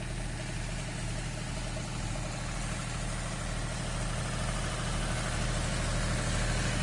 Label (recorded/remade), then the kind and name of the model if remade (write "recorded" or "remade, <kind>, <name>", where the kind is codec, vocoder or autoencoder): recorded